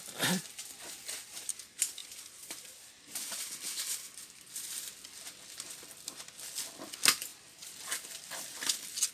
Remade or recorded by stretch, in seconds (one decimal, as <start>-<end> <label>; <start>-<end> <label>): 0.0-2.0 recorded; 2.0-6.2 remade; 6.2-7.3 recorded; 7.3-9.1 remade